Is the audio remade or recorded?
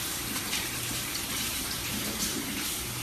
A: remade